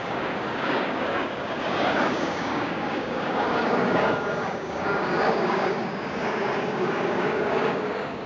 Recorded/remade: remade